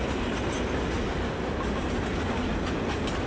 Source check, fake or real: real